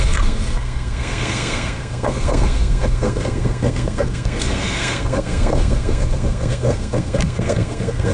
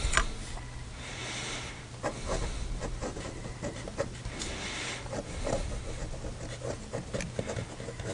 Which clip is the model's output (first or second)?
first